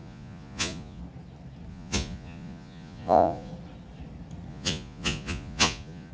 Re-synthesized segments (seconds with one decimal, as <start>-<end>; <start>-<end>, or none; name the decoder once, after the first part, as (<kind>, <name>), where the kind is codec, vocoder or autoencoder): 0.0-1.0 (vocoder, Vocos); 1.7-3.5; 4.5-6.1